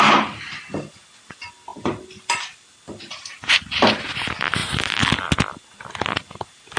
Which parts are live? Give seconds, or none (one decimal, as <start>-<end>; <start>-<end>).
0.0-1.7; 4.1-4.6; 5.2-6.8

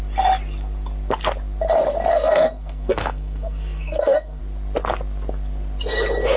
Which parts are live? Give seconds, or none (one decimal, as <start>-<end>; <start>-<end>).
0.0-2.1; 4.4-6.4

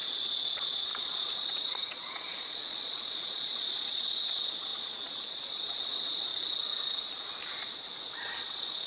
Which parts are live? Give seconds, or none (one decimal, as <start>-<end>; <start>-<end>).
6.3-8.4

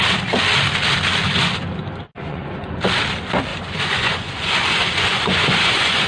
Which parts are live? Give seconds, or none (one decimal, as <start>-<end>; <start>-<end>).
0.0-2.2; 2.8-3.5

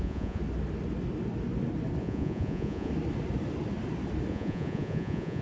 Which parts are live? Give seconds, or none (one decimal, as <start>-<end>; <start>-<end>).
0.4-2.0; 2.9-4.3

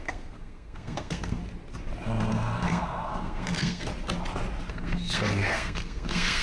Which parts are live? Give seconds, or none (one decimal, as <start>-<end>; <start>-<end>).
1.4-2.3; 3.9-4.7

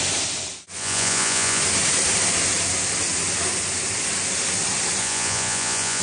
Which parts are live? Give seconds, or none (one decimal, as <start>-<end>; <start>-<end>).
0.0-0.8; 1.6-5.0